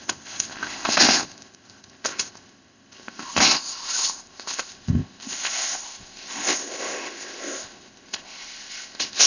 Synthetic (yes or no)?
yes